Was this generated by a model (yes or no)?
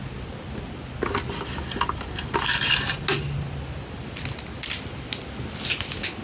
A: no